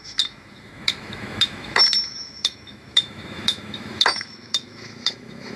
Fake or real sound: fake